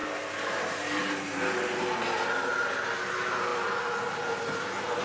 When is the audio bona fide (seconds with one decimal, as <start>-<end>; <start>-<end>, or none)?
0.0-5.0